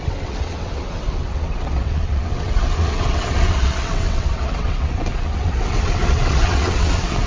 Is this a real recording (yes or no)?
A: no